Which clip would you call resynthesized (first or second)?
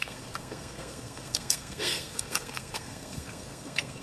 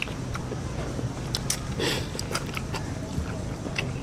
first